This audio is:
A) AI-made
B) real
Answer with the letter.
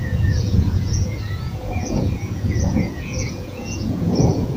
A